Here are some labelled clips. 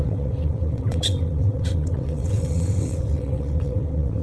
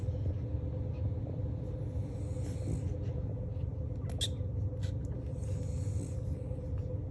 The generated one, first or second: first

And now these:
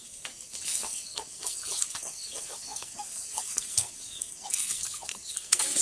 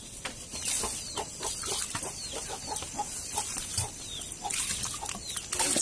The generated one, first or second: first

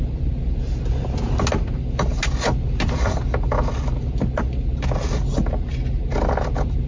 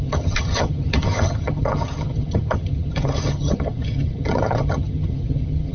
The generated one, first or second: second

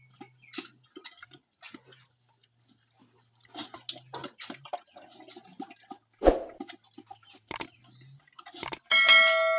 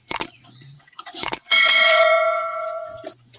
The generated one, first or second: second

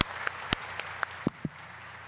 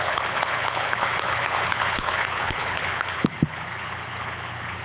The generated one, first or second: second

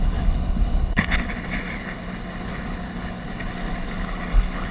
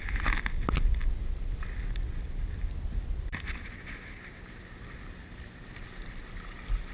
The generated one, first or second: first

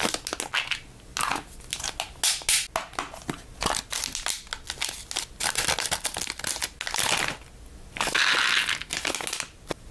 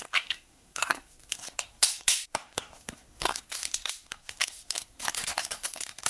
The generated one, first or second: second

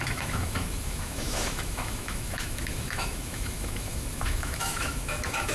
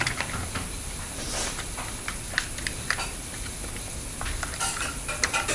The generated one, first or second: first